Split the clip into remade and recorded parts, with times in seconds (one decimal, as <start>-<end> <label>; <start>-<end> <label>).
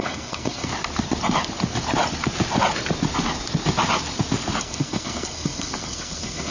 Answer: 0.0-0.7 remade; 0.7-4.6 recorded; 4.6-6.5 remade